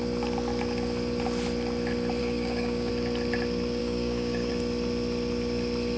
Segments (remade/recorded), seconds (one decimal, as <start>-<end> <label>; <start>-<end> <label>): 0.0-2.2 recorded; 2.2-2.9 remade; 2.9-3.8 recorded; 3.8-4.5 remade; 4.5-6.0 recorded